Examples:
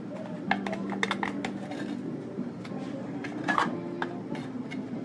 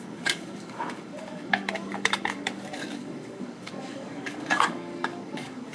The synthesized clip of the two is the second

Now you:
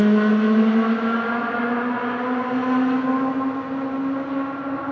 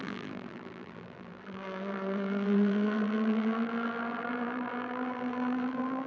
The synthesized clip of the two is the second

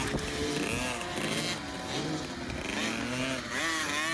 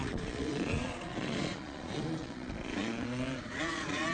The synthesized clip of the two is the second